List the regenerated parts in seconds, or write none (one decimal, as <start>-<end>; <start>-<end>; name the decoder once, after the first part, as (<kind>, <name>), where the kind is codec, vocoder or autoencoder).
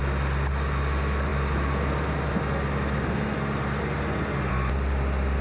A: none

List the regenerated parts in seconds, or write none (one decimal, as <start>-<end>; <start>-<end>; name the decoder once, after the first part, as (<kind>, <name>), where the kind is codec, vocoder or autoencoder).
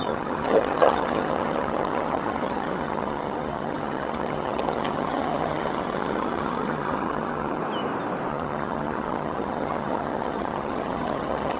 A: 0.0-7.6 (vocoder, HiFi-GAN); 8.3-11.6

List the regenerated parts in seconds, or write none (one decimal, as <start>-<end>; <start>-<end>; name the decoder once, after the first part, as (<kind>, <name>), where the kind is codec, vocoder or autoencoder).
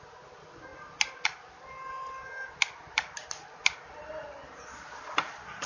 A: none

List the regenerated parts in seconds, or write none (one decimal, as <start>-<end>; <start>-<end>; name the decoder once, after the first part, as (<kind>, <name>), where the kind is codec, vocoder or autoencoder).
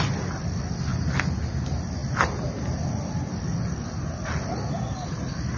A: none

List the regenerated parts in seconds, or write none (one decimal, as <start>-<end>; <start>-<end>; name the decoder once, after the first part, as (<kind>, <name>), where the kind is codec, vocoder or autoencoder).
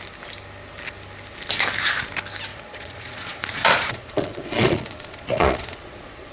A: 2.5-6.3 (vocoder, Vocos)